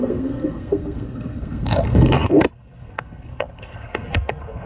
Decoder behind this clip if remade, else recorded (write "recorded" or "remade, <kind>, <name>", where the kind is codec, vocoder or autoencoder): remade, codec, SNAC